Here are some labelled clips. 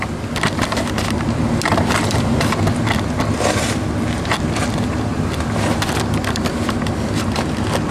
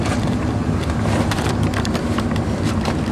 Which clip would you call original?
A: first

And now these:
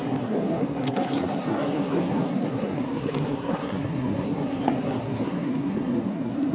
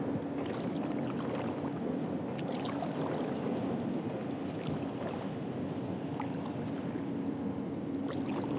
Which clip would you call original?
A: second